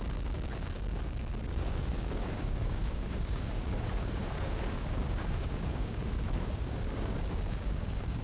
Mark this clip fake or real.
fake